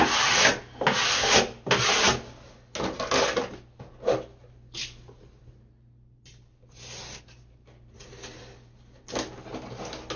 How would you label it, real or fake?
real